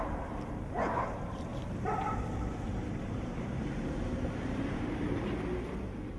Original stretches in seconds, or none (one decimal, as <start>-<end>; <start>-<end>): 0.0-1.5; 5.2-6.2